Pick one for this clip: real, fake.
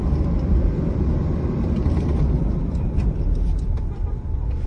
fake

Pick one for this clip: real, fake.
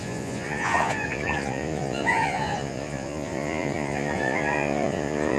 fake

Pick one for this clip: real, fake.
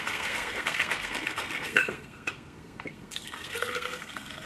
fake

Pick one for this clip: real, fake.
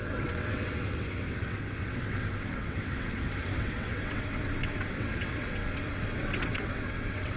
fake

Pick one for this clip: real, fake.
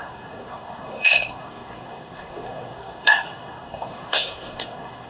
fake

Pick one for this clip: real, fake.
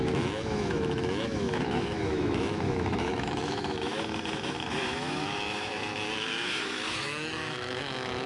fake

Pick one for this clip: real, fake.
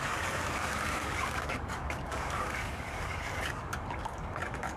fake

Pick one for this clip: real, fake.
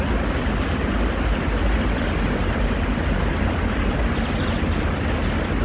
real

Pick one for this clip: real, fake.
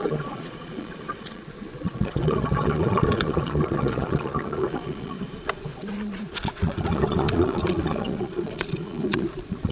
fake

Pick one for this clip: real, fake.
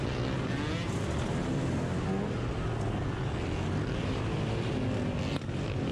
real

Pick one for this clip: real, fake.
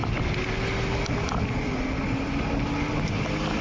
real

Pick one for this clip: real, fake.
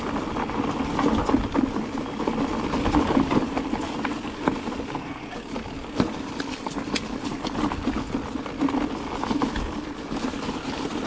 real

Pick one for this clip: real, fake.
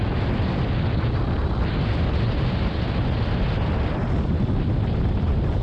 real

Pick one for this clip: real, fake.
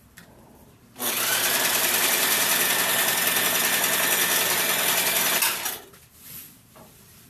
fake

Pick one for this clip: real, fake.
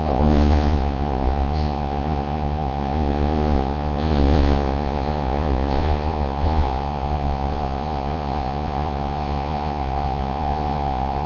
fake